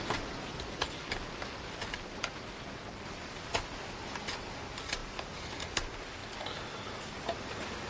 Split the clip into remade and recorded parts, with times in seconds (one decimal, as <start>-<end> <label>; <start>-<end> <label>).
0.0-7.9 recorded